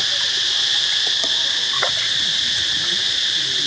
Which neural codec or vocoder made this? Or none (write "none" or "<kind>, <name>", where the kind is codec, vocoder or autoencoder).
none